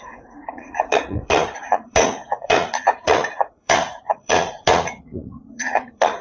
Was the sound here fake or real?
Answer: fake